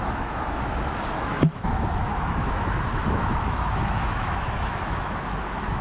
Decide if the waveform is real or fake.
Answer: fake